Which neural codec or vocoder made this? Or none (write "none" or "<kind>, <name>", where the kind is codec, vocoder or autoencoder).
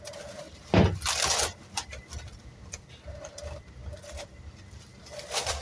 none